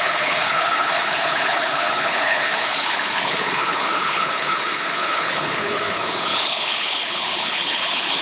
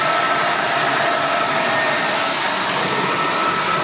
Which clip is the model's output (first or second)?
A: first